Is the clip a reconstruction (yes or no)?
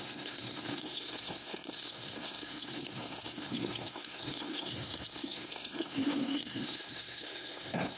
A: yes